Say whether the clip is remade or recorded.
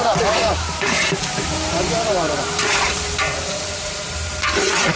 remade